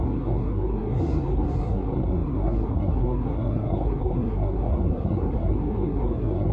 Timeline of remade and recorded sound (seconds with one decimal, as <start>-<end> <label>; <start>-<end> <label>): 0.0-6.5 remade